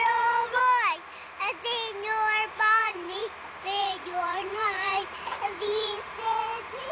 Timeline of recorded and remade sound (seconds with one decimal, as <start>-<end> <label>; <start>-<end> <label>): 0.0-0.6 remade; 0.6-2.8 recorded; 2.8-3.2 remade; 3.2-3.8 recorded; 3.8-6.9 remade